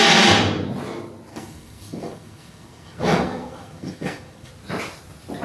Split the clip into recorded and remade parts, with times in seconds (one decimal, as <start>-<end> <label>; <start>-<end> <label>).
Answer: 0.0-1.3 recorded; 1.3-4.5 remade; 4.5-5.4 recorded